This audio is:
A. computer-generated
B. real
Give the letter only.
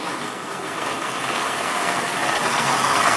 A